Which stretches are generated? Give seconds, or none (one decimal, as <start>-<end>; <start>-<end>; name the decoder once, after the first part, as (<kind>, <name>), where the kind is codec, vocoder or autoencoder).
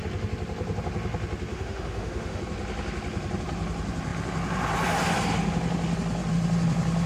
1.5-2.4 (autoencoder, DAC-VAE)